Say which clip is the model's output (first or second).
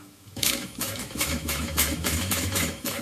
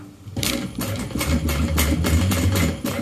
first